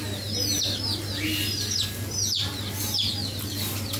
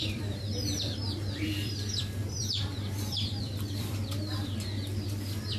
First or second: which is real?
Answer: first